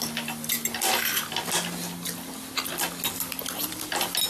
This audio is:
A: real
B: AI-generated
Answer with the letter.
A